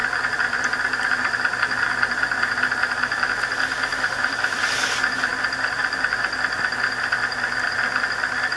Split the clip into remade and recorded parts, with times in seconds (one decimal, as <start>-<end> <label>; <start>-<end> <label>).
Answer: 0.0-1.6 remade; 1.6-3.9 recorded; 3.9-4.6 remade; 4.6-5.3 recorded; 5.3-6.7 remade; 6.7-8.6 recorded